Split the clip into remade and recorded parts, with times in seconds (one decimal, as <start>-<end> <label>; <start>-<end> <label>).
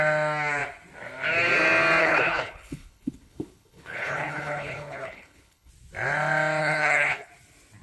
0.0-2.0 recorded; 2.0-5.7 remade; 5.7-6.6 recorded; 6.6-7.3 remade; 7.3-7.8 recorded